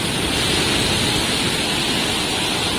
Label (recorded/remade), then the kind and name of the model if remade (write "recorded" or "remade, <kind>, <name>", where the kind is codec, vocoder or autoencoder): recorded